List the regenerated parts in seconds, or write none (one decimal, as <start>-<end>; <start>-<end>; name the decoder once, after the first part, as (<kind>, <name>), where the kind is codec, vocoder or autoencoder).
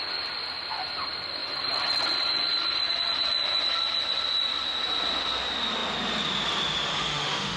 6.9-7.6 (autoencoder, DAC-VAE)